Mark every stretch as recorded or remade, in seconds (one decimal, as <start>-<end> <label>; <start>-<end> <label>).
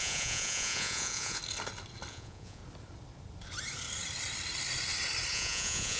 0.0-1.4 remade; 1.4-2.1 recorded; 2.1-2.6 remade; 2.6-5.3 recorded; 5.3-6.0 remade